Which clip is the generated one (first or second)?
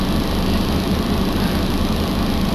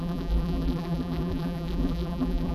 second